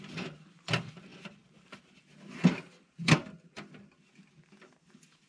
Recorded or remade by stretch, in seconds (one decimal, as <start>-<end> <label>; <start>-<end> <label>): 0.0-5.3 recorded